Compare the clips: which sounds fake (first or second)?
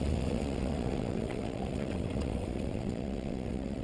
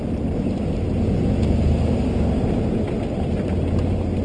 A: first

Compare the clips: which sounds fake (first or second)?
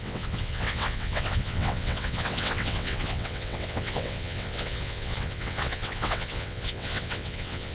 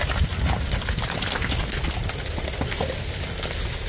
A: first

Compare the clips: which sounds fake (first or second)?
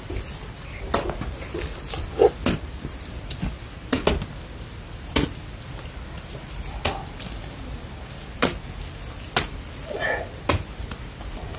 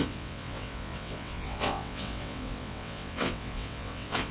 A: second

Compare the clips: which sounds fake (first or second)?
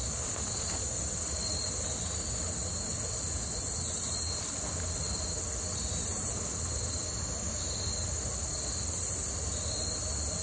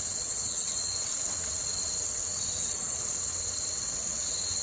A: second